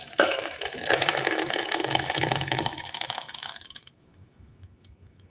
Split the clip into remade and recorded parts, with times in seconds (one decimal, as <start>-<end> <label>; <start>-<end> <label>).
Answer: 0.0-5.3 remade